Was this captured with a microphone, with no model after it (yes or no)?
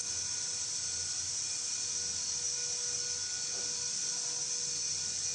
yes